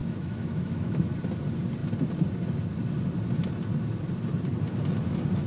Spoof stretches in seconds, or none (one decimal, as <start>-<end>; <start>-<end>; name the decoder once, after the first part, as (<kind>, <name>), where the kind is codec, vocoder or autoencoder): 0.0-1.0 (autoencoder, DAC-VAE)